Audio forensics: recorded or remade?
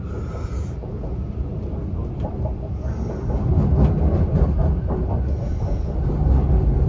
recorded